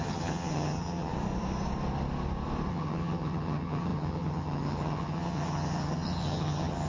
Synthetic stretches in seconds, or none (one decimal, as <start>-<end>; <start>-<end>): 0.0-1.1; 2.7-6.9